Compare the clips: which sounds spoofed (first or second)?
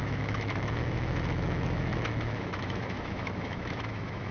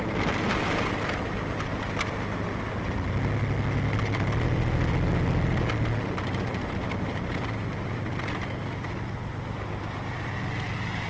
first